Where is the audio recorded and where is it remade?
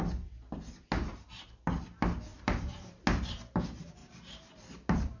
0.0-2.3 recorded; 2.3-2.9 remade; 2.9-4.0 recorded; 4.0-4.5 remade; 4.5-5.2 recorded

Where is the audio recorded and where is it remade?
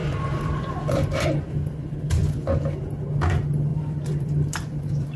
0.0-2.5 remade; 2.5-3.7 recorded; 3.7-5.2 remade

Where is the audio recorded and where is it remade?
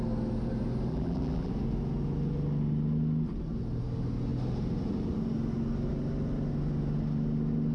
0.0-0.9 recorded; 0.9-1.5 remade; 1.5-7.7 recorded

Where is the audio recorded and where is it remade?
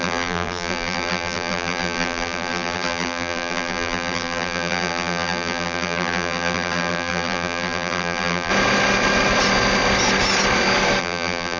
0.0-8.5 remade; 8.5-11.0 recorded; 11.0-11.6 remade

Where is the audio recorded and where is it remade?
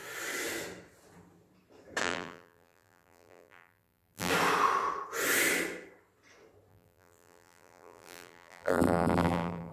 0.0-2.0 recorded; 2.0-4.3 remade; 4.3-6.7 recorded; 6.7-9.7 remade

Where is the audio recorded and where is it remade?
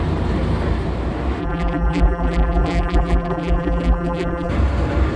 0.0-1.4 recorded; 1.4-4.5 remade; 4.5-5.2 recorded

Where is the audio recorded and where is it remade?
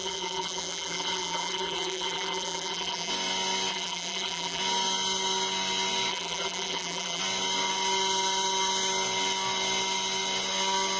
0.0-3.1 remade; 3.1-3.7 recorded; 3.7-4.6 remade; 4.6-6.1 recorded; 6.1-7.2 remade; 7.2-11.0 recorded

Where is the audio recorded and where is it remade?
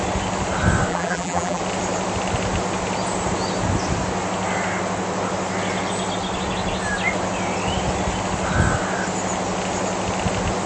0.0-0.9 recorded; 0.9-1.6 remade; 1.6-10.7 recorded